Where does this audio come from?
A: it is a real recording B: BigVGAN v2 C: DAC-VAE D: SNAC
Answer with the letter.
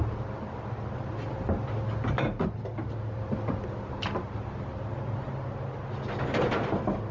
A